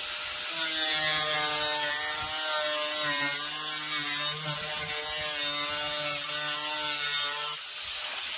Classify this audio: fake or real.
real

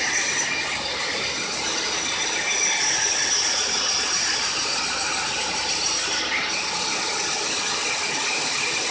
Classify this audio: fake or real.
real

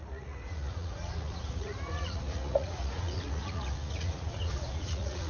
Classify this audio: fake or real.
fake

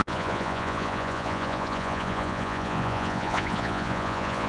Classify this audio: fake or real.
fake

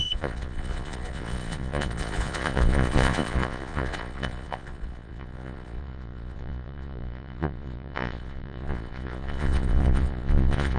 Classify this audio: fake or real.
fake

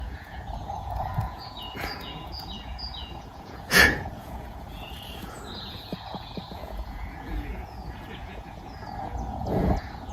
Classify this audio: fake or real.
fake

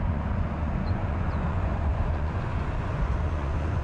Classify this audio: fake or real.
fake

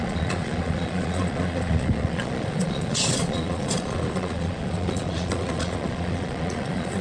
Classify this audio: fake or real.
fake